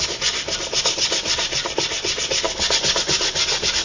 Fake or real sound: real